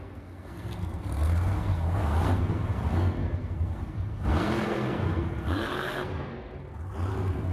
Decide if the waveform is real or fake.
fake